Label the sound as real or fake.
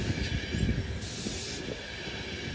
real